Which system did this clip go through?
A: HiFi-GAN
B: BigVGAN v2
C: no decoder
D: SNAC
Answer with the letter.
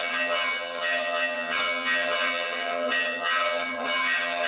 A